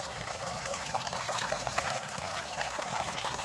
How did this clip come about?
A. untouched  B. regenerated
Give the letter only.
B